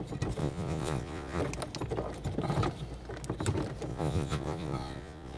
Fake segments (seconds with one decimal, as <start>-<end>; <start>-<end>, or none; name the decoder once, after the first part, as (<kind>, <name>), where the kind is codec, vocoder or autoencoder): 0.4-1.4 (vocoder, Vocos); 3.9-5.4